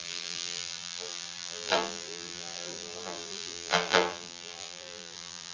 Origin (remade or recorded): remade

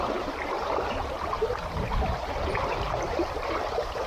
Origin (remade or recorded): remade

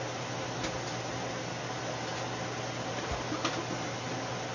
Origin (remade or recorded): recorded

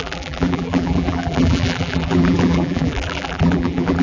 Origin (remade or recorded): remade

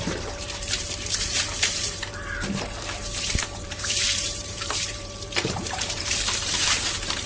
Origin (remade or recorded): remade